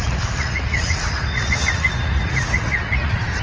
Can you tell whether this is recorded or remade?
remade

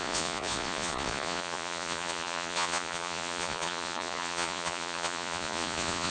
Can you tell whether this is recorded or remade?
remade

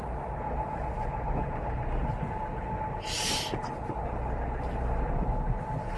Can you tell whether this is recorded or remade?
recorded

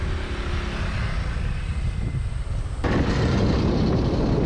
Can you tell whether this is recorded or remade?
recorded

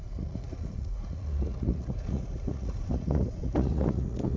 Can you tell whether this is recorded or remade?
remade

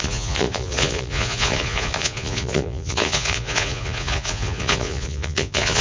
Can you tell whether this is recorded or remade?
remade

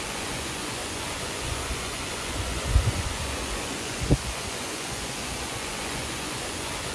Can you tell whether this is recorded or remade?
remade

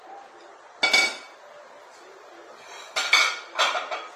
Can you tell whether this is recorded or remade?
recorded